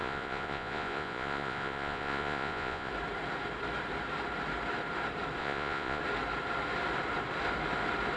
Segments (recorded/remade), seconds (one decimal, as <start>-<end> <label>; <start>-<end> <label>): 0.0-2.9 remade; 2.9-5.4 recorded; 5.4-6.0 remade; 6.0-8.2 recorded